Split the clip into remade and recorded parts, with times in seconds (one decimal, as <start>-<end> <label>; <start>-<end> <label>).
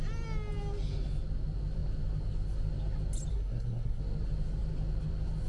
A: 0.0-3.3 recorded; 3.3-4.0 remade; 4.0-5.5 recorded